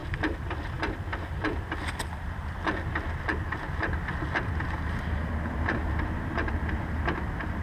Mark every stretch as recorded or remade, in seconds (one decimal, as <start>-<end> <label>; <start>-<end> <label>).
0.0-1.1 recorded; 1.1-1.9 remade; 1.9-7.6 recorded